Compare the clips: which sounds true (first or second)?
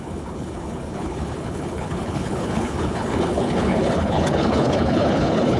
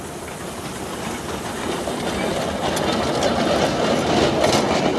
second